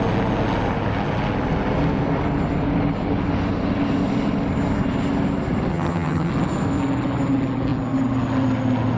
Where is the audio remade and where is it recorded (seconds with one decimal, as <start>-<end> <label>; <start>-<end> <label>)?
0.0-5.7 recorded; 5.7-6.3 remade; 6.3-9.0 recorded